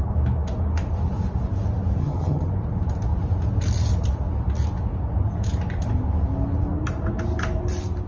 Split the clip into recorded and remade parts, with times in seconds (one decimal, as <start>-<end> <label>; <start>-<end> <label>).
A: 0.0-2.0 recorded; 2.0-2.5 remade; 2.5-8.1 recorded